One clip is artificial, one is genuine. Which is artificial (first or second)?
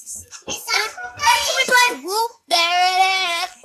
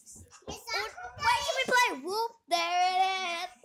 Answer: first